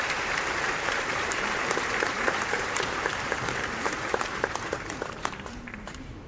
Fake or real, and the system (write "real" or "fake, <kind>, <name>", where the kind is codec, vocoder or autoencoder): fake, vocoder, BigVGAN v2